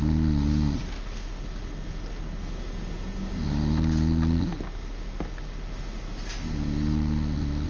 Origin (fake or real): real